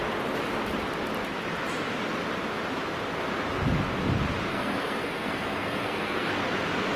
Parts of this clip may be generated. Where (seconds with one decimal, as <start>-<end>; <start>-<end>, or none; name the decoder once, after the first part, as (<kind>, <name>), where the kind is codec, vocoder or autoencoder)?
4.5-6.3 (codec, SNAC)